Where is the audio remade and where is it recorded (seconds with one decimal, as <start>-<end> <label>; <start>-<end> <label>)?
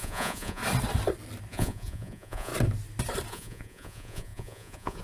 0.0-0.6 remade; 0.6-1.5 recorded; 1.5-2.5 remade; 2.5-3.3 recorded; 3.3-5.0 remade